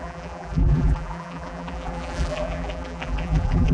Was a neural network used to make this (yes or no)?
yes